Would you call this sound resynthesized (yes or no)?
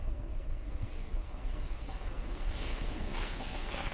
yes